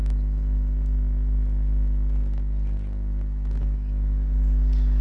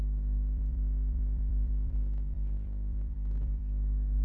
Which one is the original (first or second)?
first